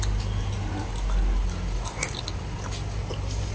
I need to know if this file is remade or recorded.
recorded